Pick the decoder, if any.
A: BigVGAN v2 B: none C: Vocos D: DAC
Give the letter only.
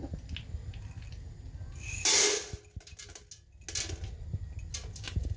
B